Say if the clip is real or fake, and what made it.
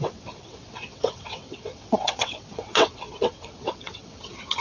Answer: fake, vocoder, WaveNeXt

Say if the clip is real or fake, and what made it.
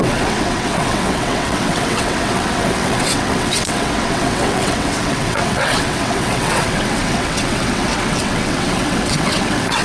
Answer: fake, vocoder, WaveNeXt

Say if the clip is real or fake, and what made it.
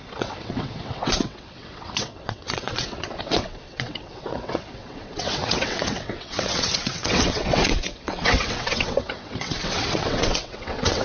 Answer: fake, vocoder, WaveNeXt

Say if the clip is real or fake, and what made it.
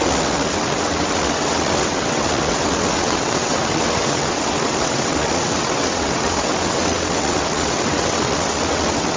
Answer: fake, vocoder, WaveNeXt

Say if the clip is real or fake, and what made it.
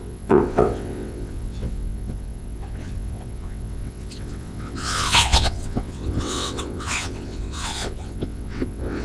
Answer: fake, vocoder, WaveNeXt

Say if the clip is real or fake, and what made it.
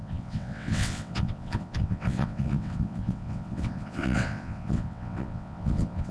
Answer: fake, vocoder, WaveNeXt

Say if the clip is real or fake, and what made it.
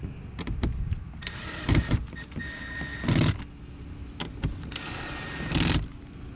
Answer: real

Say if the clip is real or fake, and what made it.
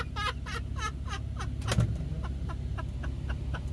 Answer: real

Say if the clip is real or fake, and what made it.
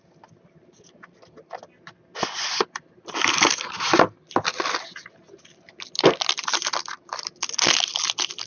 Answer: real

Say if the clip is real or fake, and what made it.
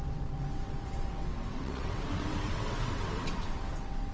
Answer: fake, vocoder, WaveNeXt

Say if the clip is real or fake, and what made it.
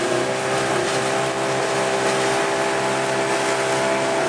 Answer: real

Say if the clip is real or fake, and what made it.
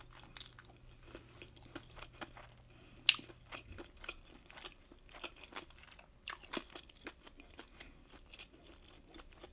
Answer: real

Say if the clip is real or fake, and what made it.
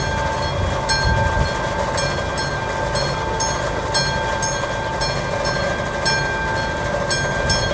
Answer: real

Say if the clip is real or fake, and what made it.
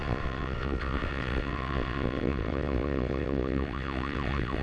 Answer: fake, vocoder, WaveNeXt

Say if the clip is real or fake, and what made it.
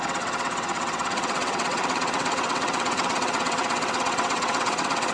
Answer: fake, vocoder, WaveNeXt